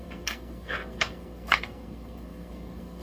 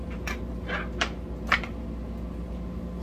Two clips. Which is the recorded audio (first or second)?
second